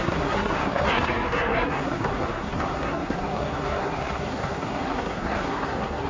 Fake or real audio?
fake